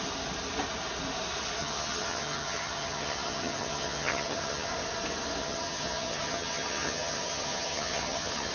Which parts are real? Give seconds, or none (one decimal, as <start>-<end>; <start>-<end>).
0.0-1.6; 4.7-5.4